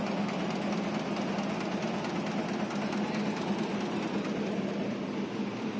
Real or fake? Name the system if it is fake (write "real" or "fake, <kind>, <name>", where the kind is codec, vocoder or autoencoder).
real